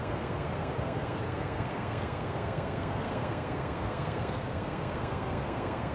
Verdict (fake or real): fake